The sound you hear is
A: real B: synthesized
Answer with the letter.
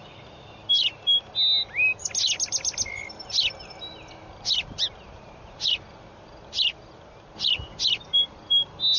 A